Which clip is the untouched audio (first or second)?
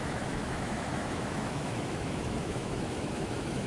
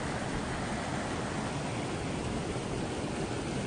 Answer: second